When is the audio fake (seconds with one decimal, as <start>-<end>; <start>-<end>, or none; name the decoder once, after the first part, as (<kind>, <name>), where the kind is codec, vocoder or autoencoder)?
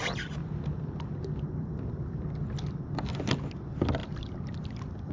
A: 0.4-3.5 (vocoder, BigVGAN v2); 4.0-5.1